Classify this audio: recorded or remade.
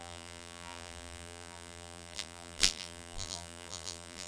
remade